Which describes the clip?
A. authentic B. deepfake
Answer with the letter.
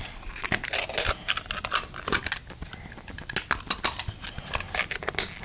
A